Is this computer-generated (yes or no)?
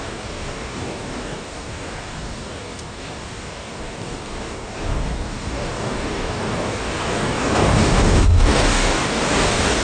yes